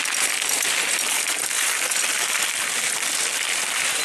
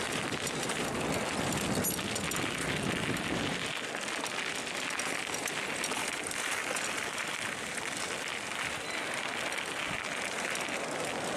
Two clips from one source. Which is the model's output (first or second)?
first